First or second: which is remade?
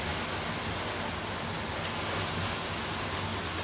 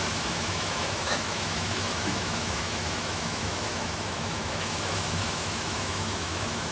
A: second